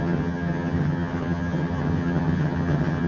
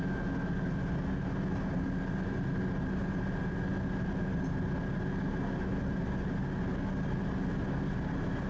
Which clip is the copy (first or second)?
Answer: first